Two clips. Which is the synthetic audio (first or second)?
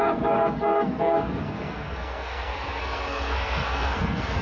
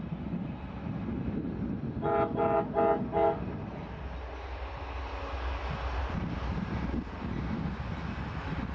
first